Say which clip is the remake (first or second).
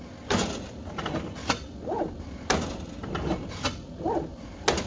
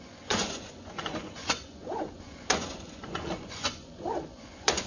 second